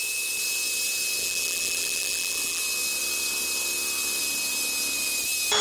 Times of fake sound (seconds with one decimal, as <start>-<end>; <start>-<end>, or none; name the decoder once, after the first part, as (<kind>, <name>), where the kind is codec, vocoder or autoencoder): 1.2-2.6 (vocoder, BigVGAN v2)